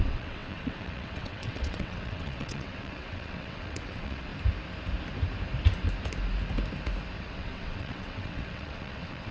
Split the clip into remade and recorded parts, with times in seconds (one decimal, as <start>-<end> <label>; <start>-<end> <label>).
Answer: 0.0-4.3 remade; 4.3-7.2 recorded; 7.2-9.3 remade

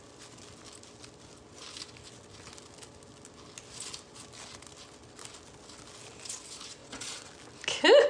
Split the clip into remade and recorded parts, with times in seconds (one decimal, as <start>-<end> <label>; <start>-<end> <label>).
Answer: 0.0-6.8 recorded; 6.8-7.3 remade; 7.3-8.1 recorded

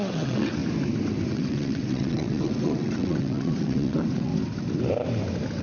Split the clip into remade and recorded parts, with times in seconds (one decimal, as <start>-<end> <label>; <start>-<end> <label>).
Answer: 0.0-0.6 remade; 0.6-1.3 recorded; 1.3-4.3 remade; 4.3-5.6 recorded